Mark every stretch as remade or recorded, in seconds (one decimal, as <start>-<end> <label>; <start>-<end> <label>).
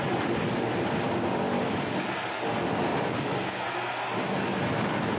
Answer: 0.0-5.2 recorded